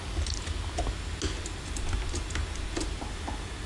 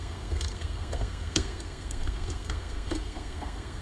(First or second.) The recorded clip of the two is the first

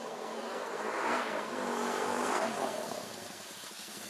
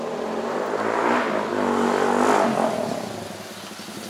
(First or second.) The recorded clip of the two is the second